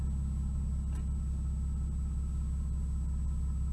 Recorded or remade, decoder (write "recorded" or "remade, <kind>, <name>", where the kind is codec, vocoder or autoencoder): recorded